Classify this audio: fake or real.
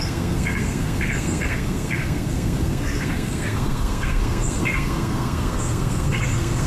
fake